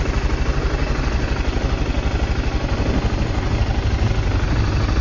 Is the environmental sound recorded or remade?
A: recorded